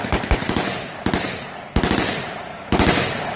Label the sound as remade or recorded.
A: recorded